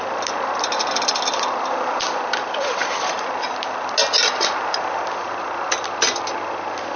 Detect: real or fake real